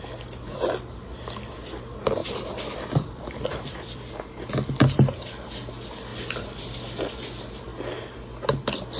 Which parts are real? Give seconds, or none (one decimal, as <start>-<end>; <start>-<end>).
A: 0.0-2.2; 4.0-6.1; 7.0-9.0

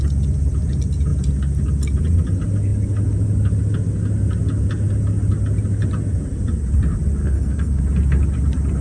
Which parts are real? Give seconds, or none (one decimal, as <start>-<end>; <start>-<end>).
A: 0.0-7.2; 7.8-8.8

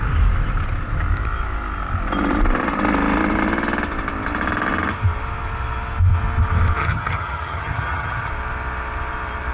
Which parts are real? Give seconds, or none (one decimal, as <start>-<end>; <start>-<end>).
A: 0.0-6.8; 8.3-9.5

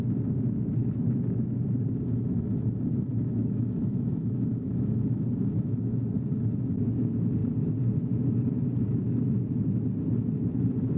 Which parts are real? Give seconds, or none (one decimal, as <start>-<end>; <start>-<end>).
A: 0.0-0.8; 1.6-3.4; 5.0-11.0

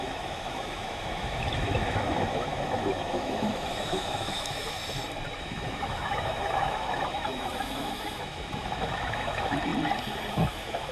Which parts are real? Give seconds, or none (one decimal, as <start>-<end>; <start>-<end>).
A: 4.8-5.4; 9.7-10.3

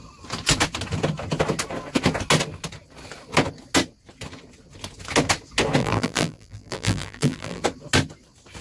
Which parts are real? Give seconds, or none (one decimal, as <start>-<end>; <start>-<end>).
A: 0.0-5.8; 7.6-8.6